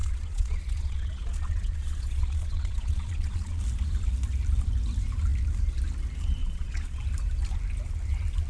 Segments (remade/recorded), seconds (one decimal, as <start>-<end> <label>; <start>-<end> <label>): 0.0-3.6 remade; 3.6-6.4 recorded; 6.4-7.0 remade; 7.0-8.5 recorded